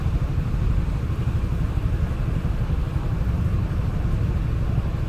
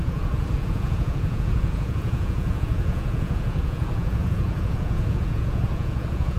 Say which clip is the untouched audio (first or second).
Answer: first